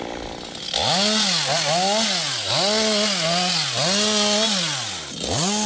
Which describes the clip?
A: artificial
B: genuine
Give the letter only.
B